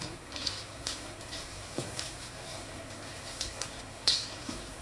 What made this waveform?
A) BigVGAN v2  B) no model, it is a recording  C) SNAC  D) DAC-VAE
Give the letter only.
C